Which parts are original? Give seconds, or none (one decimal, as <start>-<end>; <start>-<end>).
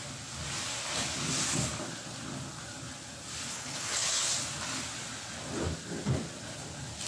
0.0-3.5; 4.3-7.1